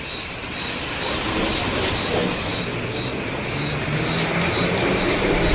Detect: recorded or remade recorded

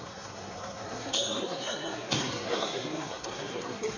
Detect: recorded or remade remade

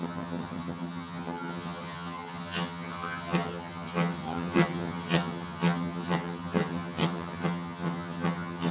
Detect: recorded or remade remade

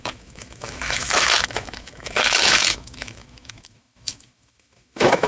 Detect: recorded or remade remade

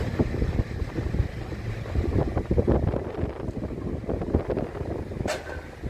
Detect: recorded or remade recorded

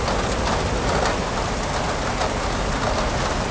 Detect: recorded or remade recorded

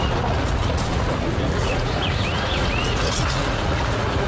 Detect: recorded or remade remade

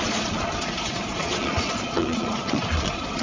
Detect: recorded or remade remade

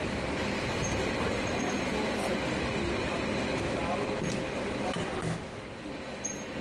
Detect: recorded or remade recorded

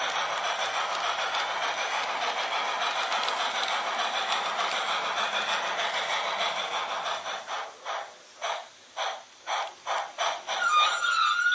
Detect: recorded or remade recorded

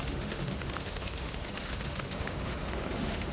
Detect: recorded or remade remade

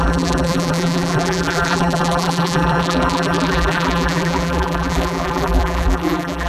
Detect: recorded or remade remade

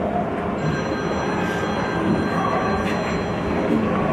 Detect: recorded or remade recorded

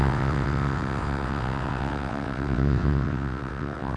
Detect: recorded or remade remade